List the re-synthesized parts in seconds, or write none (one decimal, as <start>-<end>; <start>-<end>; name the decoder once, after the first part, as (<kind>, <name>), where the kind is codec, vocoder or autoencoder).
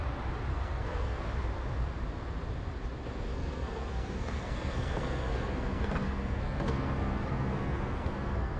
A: 0.5-1.2 (codec, SNAC); 3.3-8.6